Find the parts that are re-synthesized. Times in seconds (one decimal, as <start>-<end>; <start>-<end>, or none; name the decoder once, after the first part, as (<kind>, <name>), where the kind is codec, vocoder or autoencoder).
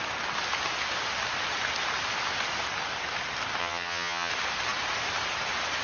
3.6-4.3 (vocoder, HiFi-GAN)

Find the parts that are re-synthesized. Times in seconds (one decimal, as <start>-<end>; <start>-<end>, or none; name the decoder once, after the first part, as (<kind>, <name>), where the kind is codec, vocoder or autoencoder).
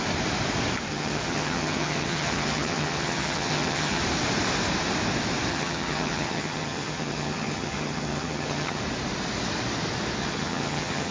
0.9-4.0 (vocoder, HiFi-GAN); 5.5-8.8; 10.2-11.1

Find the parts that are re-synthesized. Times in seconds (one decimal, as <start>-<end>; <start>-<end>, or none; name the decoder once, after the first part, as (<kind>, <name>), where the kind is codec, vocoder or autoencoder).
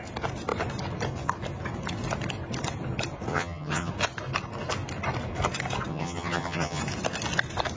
3.3-3.9 (vocoder, HiFi-GAN); 5.9-6.8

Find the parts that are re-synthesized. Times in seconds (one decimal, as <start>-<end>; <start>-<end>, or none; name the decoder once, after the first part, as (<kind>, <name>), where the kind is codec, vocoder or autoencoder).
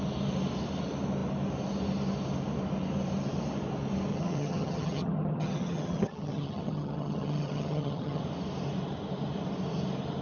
4.1-8.2 (vocoder, HiFi-GAN)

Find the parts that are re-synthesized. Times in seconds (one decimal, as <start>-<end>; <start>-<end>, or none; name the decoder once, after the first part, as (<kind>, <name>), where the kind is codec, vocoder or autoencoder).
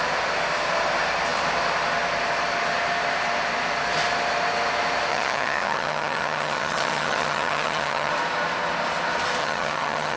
5.1-8.1 (vocoder, HiFi-GAN); 9.4-10.2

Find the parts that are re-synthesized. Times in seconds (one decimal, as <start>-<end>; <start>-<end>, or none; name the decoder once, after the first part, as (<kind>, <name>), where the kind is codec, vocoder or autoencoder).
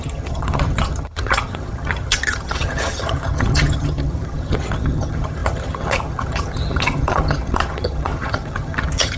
0.0-9.2 (vocoder, HiFi-GAN)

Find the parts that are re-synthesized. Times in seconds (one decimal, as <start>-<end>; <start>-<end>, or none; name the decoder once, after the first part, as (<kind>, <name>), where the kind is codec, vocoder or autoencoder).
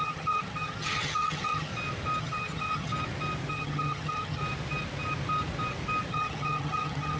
0.0-1.7 (vocoder, HiFi-GAN); 2.2-2.9; 3.5-4.4; 6.1-7.2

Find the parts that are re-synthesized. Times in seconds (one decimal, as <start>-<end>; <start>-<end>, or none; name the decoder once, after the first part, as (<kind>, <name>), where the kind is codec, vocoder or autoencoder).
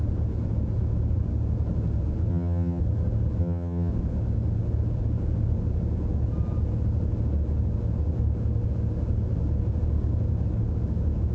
2.3-2.8 (vocoder, HiFi-GAN); 3.4-3.9